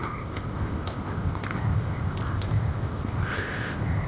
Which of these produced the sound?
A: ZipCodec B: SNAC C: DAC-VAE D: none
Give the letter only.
A